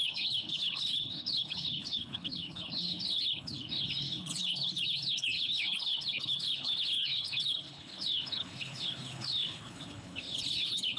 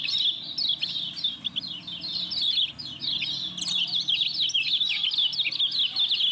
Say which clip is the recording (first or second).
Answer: second